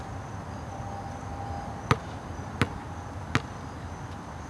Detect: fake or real real